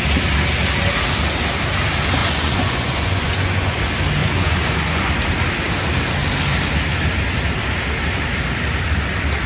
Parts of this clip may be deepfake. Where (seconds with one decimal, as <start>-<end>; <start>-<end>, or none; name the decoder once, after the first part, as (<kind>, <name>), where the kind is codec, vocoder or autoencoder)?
2.2-3.8 (vocoder, Vocos); 4.2-5.1

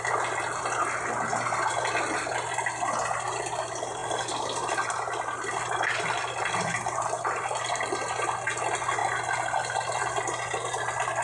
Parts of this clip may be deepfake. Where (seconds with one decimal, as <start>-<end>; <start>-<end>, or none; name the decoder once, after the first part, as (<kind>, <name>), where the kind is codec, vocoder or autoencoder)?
none

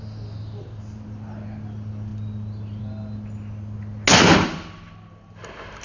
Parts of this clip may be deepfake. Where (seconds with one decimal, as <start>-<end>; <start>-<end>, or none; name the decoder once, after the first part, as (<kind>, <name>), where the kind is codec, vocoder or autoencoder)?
none

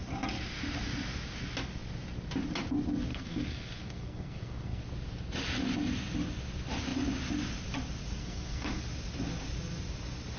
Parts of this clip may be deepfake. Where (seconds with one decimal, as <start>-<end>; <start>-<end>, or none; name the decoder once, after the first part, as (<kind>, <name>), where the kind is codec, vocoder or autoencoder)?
3.1-4.8 (codec, SNAC); 8.2-8.8